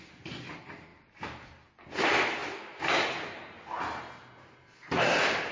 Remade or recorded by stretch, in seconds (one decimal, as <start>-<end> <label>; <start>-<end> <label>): 0.0-2.4 remade; 2.4-5.5 recorded